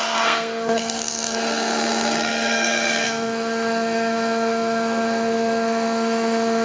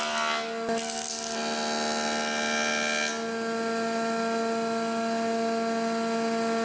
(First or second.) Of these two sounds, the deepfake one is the first